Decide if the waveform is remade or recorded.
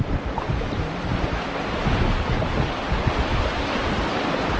recorded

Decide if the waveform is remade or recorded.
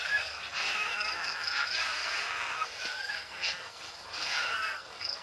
remade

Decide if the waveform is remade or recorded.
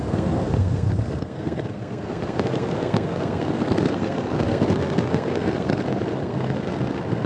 remade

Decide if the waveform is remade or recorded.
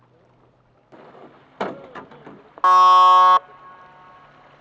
recorded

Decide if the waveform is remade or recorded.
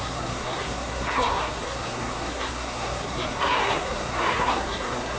remade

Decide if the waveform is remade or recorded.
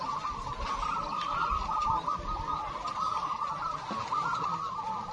recorded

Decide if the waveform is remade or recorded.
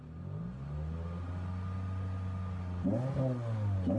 recorded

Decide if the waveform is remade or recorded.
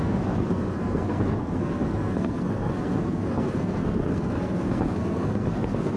remade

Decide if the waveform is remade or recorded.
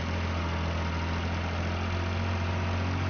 recorded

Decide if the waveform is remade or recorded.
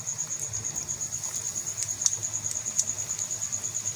recorded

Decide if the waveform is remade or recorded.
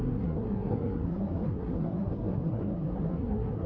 remade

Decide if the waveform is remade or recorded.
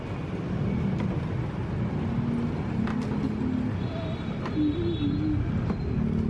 recorded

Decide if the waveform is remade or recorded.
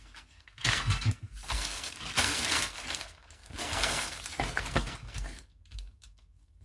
remade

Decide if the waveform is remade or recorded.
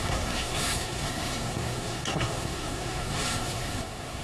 remade